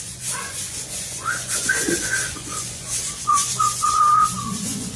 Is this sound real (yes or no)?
no